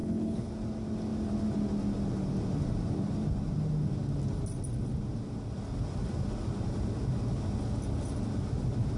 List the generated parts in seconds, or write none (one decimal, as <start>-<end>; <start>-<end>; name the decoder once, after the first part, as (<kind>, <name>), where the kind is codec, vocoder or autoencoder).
0.0-0.5 (codec, HILCodec)